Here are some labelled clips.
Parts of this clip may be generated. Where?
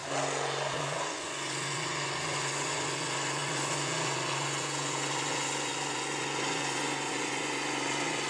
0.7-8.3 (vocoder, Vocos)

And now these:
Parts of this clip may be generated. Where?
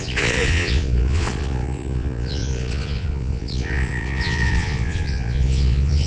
0.0-6.1 (vocoder, Vocos)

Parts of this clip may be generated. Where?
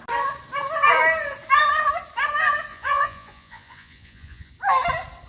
2.7-4.5 (vocoder, Vocos)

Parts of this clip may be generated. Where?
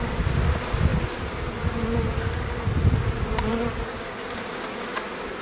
none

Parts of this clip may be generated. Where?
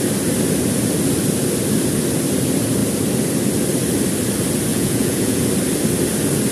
4.7-5.4 (vocoder, Vocos)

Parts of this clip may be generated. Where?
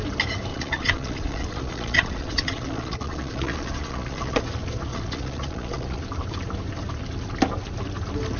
0.5-4.4 (vocoder, Vocos); 4.9-6.0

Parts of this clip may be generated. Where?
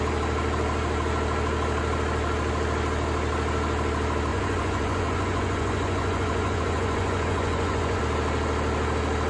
4.3-8.0 (vocoder, Vocos)